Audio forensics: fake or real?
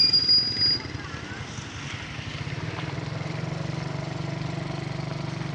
real